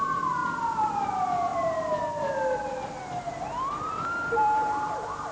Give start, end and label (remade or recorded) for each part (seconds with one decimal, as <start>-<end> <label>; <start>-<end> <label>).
0.0-5.3 recorded